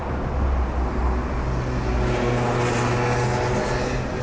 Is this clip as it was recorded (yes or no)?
yes